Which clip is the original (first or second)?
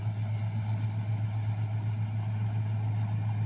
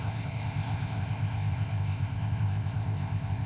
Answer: first